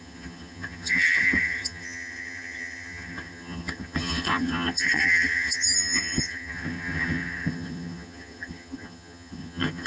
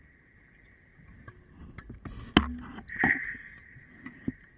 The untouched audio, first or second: second